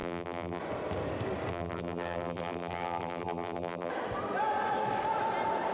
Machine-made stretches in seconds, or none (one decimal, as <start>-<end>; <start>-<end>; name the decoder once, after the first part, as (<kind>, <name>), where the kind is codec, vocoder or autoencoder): 0.0-0.6 (vocoder, BigVGAN v2); 1.5-3.9